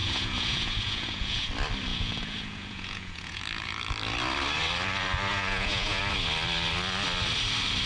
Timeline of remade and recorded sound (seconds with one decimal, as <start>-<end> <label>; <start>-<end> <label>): 0.0-1.5 remade; 1.5-1.9 recorded; 1.9-3.4 remade; 3.4-5.3 recorded; 5.3-6.0 remade; 6.0-7.9 recorded